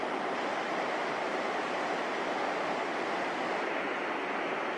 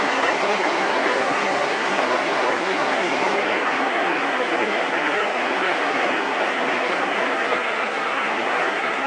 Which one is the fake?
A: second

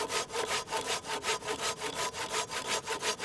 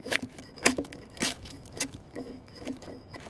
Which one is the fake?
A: second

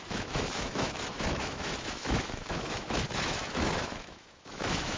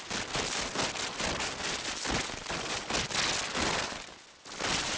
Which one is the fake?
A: first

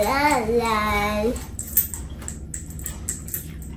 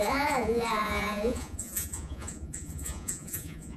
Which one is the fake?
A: second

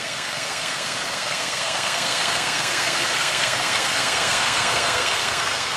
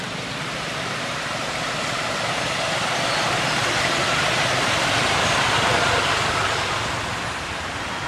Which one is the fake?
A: first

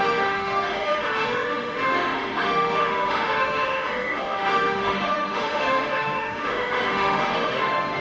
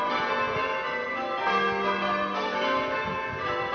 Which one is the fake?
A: first